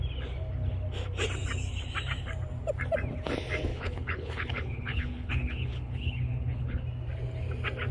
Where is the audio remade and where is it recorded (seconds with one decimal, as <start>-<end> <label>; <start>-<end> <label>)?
0.0-3.7 recorded; 3.7-6.8 remade; 6.8-7.9 recorded